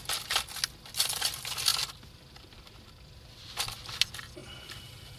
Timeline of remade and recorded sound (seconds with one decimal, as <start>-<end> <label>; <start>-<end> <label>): 0.0-1.7 recorded; 1.7-3.5 remade; 3.5-4.4 recorded; 4.4-5.2 remade